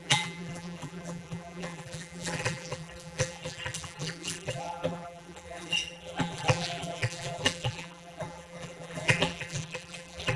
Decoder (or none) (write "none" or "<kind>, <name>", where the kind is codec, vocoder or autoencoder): vocoder, BigVGAN v2